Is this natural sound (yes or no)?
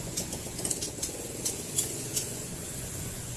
no